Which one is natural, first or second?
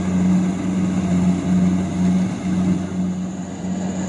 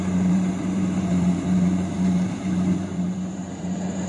first